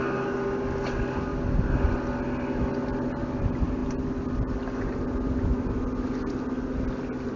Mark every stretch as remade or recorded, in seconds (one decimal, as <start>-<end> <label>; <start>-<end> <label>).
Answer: 0.0-7.4 recorded